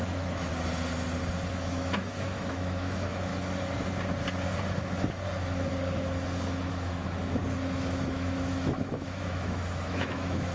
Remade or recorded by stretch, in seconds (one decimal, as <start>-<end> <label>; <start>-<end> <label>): 0.0-0.5 remade; 0.5-1.5 recorded; 1.5-3.3 remade; 3.3-6.7 recorded; 6.7-7.4 remade; 7.4-8.1 recorded; 8.1-10.5 remade